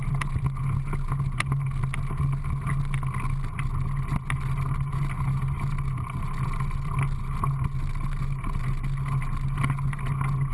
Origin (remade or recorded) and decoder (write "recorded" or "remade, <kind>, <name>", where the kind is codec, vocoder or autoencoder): recorded